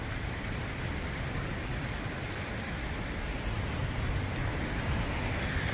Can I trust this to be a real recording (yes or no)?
yes